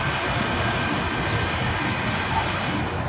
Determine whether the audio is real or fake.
real